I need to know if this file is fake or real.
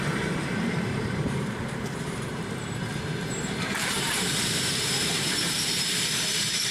fake